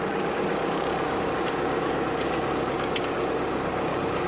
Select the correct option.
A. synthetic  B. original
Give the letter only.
A